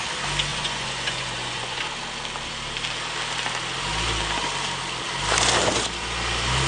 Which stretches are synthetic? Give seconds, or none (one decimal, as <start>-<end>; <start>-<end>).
0.5-1.8